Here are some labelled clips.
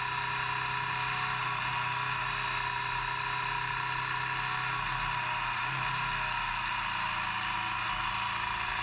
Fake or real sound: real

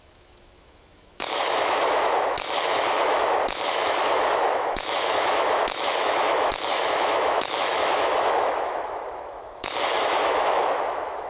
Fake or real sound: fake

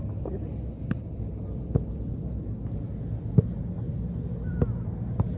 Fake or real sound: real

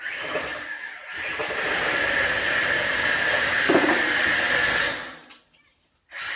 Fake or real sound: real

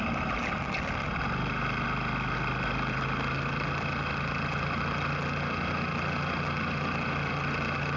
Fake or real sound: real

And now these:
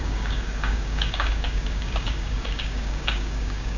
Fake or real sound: fake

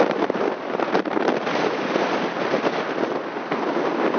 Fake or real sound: real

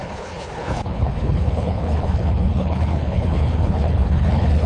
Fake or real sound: fake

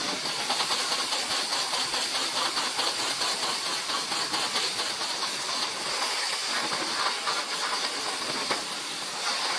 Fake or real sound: real